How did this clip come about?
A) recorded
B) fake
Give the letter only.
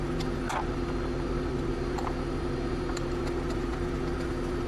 A